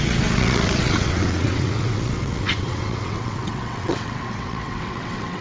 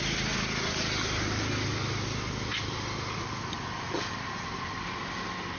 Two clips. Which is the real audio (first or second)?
second